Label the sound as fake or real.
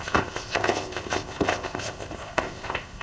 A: fake